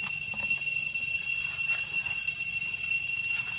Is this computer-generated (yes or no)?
no